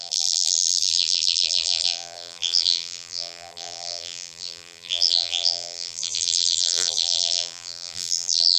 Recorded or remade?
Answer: remade